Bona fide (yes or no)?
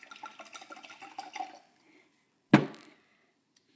yes